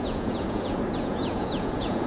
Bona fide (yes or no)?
no